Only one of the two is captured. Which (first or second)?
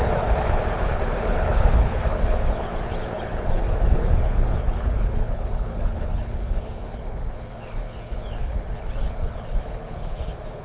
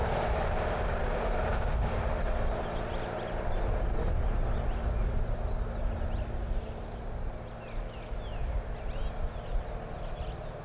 second